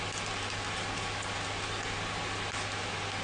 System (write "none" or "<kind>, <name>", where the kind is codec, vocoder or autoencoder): none